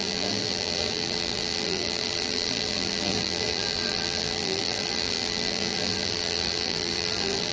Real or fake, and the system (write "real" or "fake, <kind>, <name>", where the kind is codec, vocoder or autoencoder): fake, vocoder, BigVGAN v2